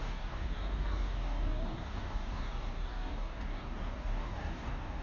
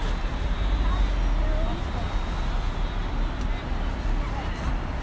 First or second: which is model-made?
first